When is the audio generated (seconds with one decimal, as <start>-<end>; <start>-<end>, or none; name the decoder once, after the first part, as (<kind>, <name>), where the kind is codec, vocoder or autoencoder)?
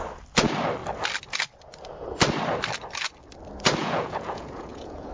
3.8-5.1 (vocoder, Vocos)